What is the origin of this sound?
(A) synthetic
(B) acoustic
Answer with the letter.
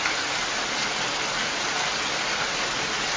B